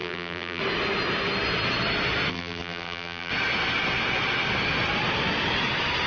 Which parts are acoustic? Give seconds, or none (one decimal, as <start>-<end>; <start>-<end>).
0.6-2.3; 3.3-6.1